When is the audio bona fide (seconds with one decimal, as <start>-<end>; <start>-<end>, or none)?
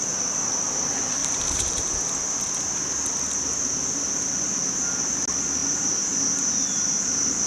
0.0-1.2; 1.8-7.5